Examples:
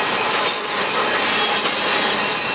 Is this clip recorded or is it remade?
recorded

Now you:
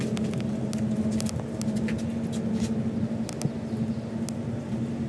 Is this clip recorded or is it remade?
recorded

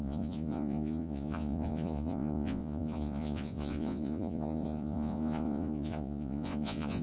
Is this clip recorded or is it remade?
remade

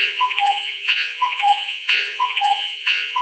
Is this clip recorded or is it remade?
remade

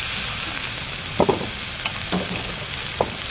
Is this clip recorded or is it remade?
recorded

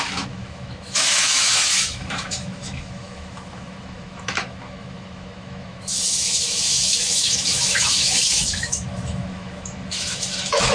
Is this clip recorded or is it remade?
remade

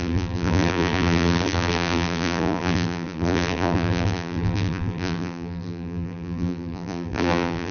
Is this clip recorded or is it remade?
remade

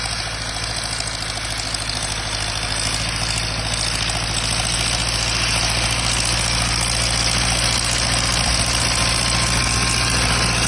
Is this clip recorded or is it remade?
recorded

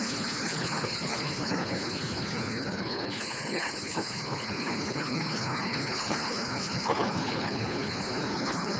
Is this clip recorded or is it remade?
remade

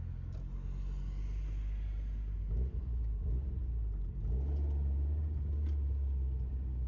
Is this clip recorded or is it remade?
recorded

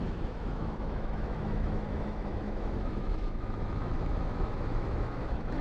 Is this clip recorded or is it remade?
remade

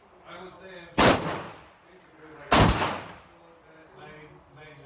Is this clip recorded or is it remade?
recorded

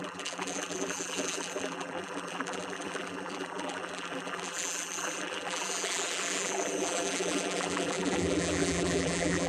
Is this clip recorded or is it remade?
remade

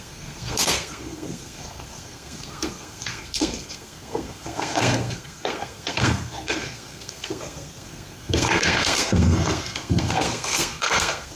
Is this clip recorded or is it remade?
remade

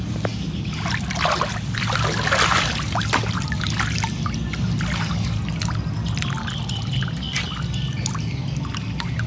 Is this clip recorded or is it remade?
recorded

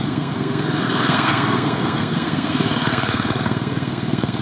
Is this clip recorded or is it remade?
remade